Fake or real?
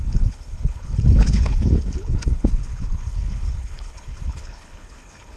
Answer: fake